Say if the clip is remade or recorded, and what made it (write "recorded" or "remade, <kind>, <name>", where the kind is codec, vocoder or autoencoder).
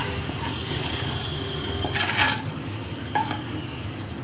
remade, codec, DAC